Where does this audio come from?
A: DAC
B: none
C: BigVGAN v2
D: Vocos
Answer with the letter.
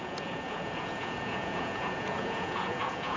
D